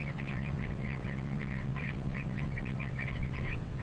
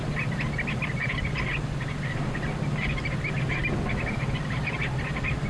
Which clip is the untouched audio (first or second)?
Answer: second